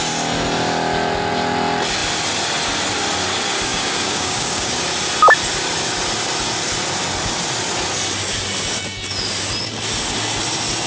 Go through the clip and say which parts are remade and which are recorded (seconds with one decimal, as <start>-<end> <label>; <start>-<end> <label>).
0.0-3.7 recorded; 3.7-4.8 remade; 4.8-10.9 recorded